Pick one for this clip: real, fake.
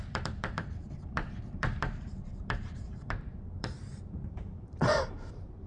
fake